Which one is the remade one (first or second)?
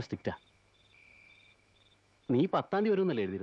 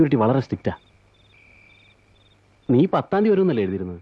first